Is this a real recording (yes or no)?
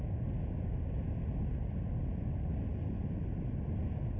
yes